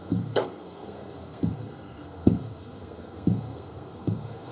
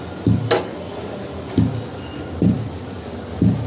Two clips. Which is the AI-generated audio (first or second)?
first